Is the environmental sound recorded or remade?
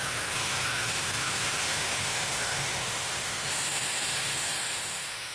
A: remade